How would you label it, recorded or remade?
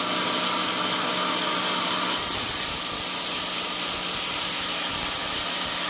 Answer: recorded